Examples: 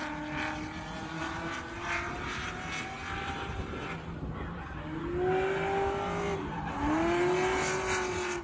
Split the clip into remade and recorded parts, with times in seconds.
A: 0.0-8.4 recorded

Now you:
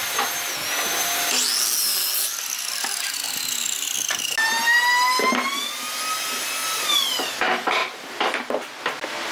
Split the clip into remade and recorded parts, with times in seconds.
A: 0.0-7.8 recorded; 7.8-8.8 remade; 8.8-9.3 recorded

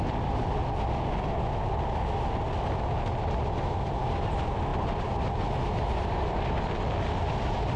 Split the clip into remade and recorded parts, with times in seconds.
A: 0.0-0.6 remade; 0.6-4.0 recorded; 4.0-7.8 remade

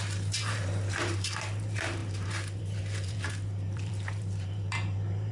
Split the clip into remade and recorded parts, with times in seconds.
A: 0.0-5.3 remade